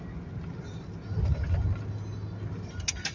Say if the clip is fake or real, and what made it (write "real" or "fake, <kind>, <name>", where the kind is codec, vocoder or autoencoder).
real